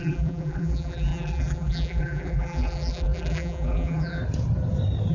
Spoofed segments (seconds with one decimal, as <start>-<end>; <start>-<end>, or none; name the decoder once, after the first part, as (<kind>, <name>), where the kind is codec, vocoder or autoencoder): 0.0-4.2 (vocoder, BigVGAN v2)